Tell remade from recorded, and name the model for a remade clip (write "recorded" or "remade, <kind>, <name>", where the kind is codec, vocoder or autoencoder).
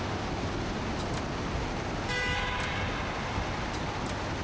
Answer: recorded